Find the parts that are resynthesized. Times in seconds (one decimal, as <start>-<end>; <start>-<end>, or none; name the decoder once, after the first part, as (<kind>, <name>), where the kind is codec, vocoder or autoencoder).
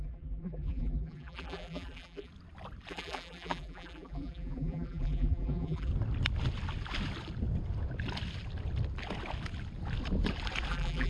0.0-2.3 (vocoder, BigVGAN v2); 2.9-5.9; 10.7-11.1